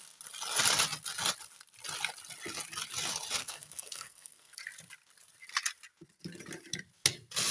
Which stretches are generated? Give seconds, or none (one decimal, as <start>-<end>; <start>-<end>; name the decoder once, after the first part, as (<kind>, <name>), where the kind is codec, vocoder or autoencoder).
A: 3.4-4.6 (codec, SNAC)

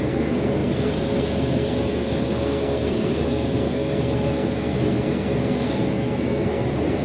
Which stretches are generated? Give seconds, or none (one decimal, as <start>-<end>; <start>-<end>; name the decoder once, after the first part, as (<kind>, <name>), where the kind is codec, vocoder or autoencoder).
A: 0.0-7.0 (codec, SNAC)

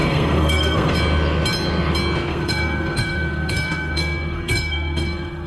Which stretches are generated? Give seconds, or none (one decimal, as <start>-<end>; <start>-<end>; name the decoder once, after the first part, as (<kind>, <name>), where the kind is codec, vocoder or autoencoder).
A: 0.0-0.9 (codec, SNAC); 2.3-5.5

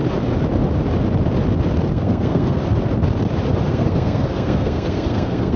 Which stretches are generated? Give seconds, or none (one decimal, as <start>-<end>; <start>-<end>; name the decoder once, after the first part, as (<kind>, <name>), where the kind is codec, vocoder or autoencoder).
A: 1.9-2.6 (codec, SNAC); 3.7-5.6